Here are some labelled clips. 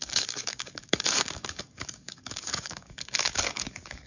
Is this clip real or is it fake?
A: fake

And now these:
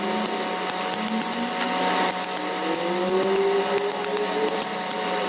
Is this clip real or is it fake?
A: real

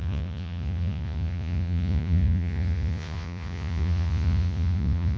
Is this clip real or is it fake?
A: fake